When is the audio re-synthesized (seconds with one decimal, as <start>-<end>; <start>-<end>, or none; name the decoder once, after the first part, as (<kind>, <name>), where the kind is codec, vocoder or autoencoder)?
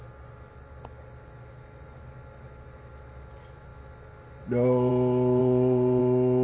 5.4-6.0 (vocoder, BigVGAN v2)